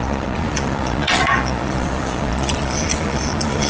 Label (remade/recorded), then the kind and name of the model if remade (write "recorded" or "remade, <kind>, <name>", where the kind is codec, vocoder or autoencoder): remade, vocoder, Vocos